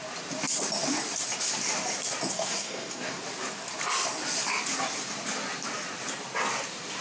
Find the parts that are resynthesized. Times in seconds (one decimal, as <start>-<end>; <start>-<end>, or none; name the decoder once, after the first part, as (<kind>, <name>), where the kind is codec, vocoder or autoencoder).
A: 2.3-3.2 (codec, SNAC)